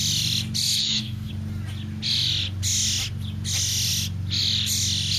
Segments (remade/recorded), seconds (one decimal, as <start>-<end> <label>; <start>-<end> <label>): 0.0-0.8 recorded; 0.8-1.3 remade; 1.3-5.2 recorded